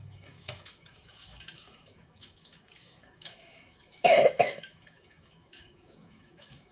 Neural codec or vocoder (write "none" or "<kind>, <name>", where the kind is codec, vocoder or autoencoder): autoencoder, DAC-VAE